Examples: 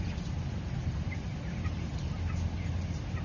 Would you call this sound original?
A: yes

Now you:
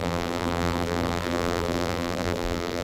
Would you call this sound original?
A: no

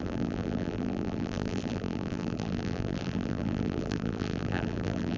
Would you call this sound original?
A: no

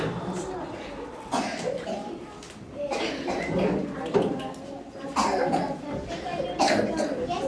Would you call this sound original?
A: no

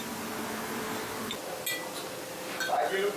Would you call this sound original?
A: yes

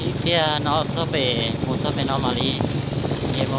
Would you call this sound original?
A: yes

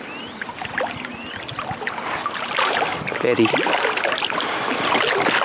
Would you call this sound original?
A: yes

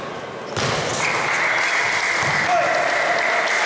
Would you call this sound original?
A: yes